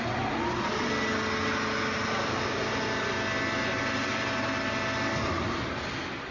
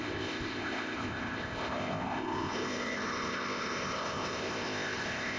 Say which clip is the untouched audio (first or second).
first